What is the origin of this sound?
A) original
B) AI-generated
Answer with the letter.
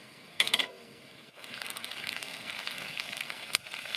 B